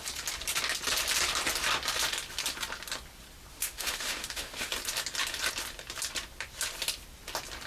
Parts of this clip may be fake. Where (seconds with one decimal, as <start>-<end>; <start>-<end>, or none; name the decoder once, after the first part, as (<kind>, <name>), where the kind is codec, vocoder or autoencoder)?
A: 3.5-4.7 (autoencoder, DAC-VAE)